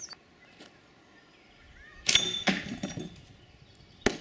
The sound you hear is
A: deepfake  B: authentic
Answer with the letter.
B